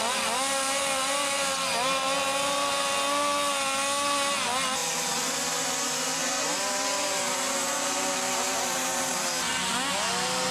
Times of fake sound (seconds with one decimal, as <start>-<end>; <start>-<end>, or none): 4.8-9.5